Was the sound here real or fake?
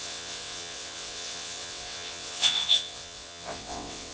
fake